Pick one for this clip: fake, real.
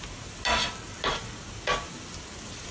real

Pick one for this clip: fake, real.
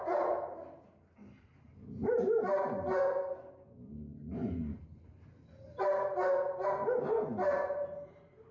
real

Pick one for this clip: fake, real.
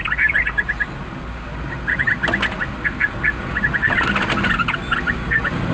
real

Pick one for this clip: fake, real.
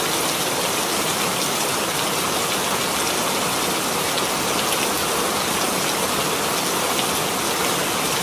real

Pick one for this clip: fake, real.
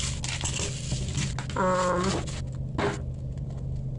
real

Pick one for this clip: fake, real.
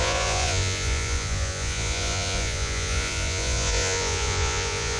fake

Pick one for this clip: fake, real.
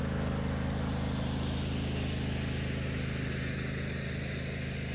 real